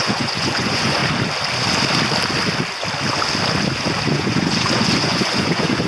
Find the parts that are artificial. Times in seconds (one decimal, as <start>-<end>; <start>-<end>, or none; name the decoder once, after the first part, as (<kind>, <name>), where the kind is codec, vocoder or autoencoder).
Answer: 0.0-1.0 (vocoder, Vocos); 4.1-5.9